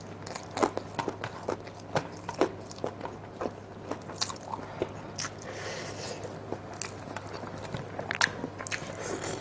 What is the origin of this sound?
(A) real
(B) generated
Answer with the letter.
A